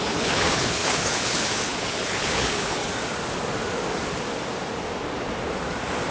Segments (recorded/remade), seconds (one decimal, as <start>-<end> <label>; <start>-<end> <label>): 0.0-2.9 remade; 2.9-6.1 recorded